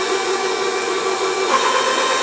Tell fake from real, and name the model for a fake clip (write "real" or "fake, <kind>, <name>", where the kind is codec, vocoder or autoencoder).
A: fake, vocoder, Vocos